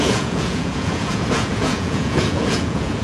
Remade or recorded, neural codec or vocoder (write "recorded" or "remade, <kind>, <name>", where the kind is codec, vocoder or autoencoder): remade, vocoder, Vocos